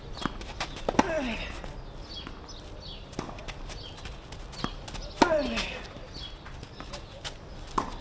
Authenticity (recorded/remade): recorded